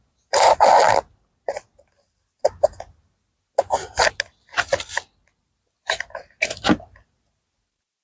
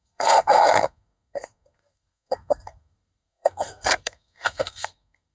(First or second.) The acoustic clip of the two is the first